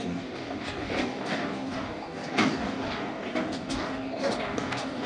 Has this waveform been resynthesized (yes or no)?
yes